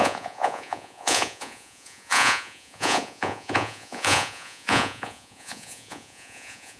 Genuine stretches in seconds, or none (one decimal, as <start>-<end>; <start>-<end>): none